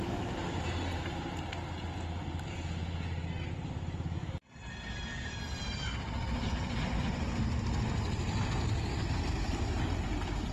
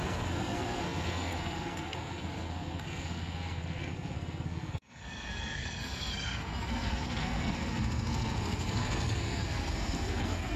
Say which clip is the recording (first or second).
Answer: first